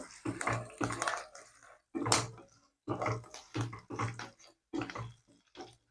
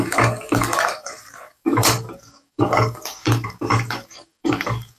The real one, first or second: first